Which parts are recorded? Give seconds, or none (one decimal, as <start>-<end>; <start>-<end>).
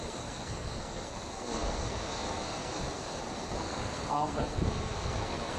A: none